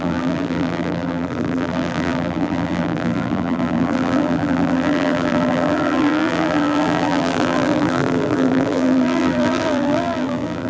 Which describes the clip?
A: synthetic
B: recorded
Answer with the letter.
A